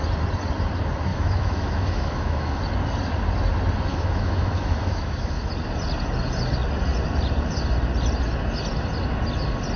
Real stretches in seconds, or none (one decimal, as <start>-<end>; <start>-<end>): 0.0-1.1; 2.6-3.9; 5.5-9.8